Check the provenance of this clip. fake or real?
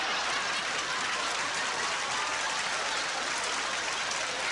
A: real